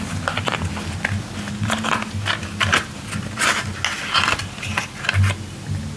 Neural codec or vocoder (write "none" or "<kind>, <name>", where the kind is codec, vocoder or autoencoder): none